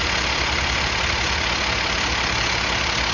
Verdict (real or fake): real